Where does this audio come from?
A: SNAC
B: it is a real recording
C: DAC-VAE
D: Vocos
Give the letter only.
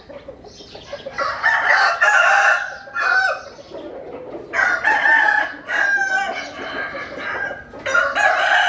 B